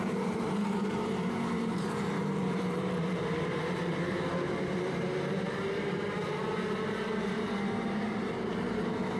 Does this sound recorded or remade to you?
remade